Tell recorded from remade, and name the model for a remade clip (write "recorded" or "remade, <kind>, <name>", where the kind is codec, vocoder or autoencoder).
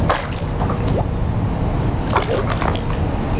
recorded